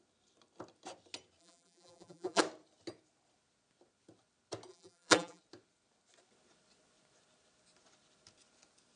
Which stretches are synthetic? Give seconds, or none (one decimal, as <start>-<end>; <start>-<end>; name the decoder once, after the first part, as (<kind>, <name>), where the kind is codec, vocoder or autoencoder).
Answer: 1.4-2.4 (vocoder, BigVGAN v2); 4.7-5.4